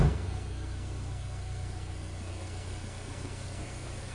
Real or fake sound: fake